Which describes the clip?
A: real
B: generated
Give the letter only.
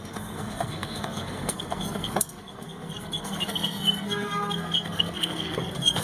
B